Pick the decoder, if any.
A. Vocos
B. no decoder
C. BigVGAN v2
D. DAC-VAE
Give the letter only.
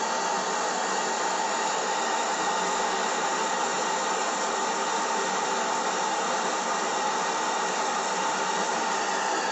B